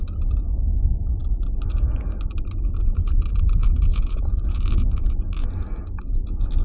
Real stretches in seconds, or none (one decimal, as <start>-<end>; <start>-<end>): 0.0-3.9; 5.3-6.6